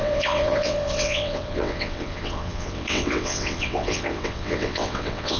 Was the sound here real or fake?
fake